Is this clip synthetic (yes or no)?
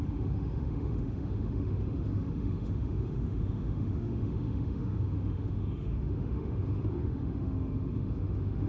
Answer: yes